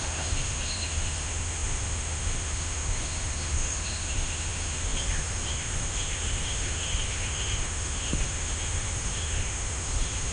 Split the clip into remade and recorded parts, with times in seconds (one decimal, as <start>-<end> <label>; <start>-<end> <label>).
0.0-10.3 remade

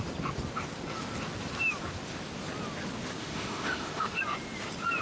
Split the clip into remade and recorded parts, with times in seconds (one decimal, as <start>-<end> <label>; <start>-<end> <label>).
0.0-3.2 recorded; 3.2-4.2 remade; 4.2-5.0 recorded

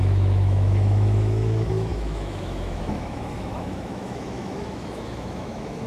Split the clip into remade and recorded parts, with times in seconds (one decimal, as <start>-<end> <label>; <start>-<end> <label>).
0.0-5.9 remade

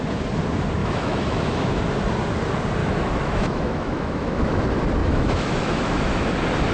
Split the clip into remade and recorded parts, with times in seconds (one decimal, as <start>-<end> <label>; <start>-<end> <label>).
0.0-0.8 recorded; 0.8-1.8 remade; 1.8-2.8 recorded; 2.8-4.6 remade; 4.6-5.0 recorded; 5.0-6.3 remade; 6.3-6.7 recorded

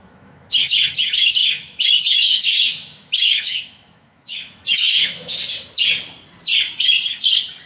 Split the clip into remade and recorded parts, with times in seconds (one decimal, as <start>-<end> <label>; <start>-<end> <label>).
0.0-5.4 remade; 5.4-7.7 recorded

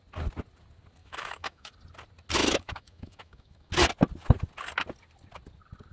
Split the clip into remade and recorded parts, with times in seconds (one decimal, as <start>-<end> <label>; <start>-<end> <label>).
0.0-1.0 recorded; 1.0-1.7 remade; 1.7-2.4 recorded; 2.4-3.7 remade; 3.7-5.9 recorded